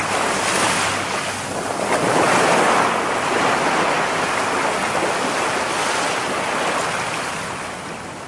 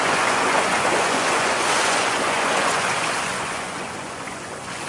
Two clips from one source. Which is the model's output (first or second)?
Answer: second